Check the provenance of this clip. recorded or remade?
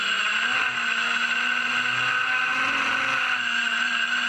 recorded